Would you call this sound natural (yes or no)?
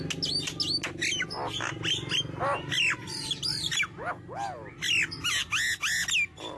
yes